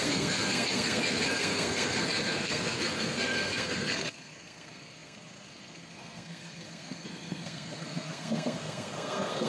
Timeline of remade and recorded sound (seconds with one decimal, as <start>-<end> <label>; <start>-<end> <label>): 0.0-9.5 remade

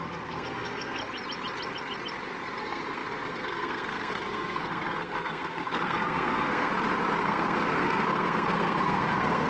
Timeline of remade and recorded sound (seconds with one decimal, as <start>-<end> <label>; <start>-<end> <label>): 0.0-1.0 remade; 1.0-2.6 recorded; 2.6-6.7 remade; 6.7-7.2 recorded; 7.2-9.5 remade

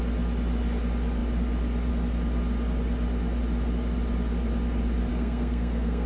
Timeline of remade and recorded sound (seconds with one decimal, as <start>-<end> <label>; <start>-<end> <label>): 0.0-5.1 recorded; 5.1-6.1 remade